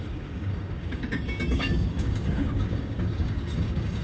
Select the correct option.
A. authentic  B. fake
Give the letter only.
B